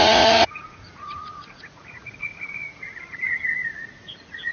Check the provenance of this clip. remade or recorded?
remade